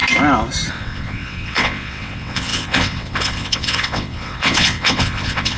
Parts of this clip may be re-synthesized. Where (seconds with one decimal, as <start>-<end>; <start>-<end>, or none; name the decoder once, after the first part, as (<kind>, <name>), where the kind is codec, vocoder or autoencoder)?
0.7-5.6 (vocoder, WaveNeXt)